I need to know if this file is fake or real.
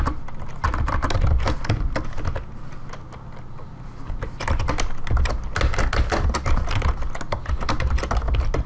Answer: real